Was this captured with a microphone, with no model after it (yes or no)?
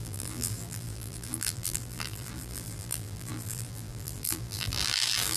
no